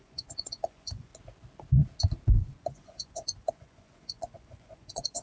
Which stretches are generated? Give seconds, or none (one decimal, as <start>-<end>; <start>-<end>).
0.0-1.1; 2.6-5.2